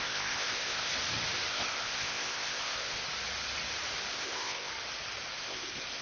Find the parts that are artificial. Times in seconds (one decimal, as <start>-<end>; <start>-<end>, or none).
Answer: 0.0-0.9; 1.5-3.0; 4.1-4.7; 5.4-6.0